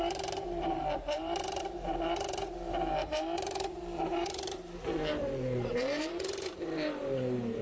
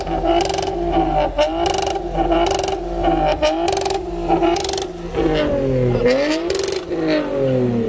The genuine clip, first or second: second